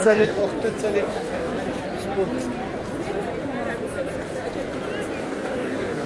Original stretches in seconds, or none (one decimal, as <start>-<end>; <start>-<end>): 0.4-1.0; 1.5-5.2